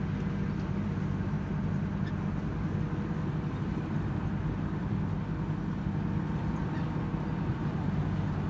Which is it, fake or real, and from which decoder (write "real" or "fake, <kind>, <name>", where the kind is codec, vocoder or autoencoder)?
real